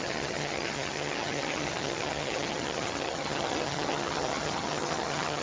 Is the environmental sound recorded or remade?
remade